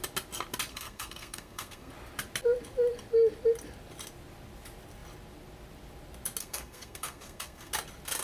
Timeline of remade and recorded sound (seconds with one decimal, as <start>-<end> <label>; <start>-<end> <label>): 0.0-0.7 recorded; 0.7-1.9 remade; 1.9-6.4 recorded; 6.4-7.7 remade; 7.7-8.2 recorded